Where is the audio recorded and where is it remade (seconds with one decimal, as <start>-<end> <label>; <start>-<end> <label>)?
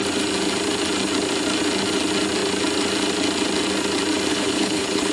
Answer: 0.0-4.3 recorded; 4.3-5.1 remade